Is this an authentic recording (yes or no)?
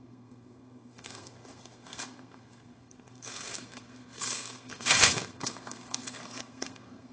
no